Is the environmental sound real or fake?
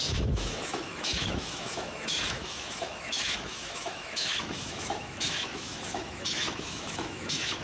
fake